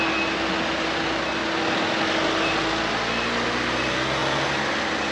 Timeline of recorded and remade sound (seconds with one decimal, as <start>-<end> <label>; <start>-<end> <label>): 0.0-5.1 recorded